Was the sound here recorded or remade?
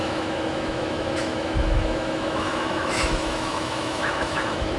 remade